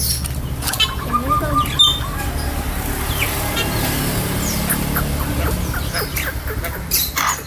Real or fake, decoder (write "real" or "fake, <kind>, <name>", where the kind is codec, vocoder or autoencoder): real